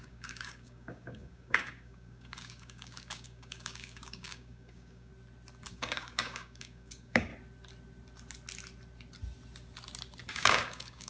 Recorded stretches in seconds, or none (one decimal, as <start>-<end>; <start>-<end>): 5.1-5.7; 7.3-10.3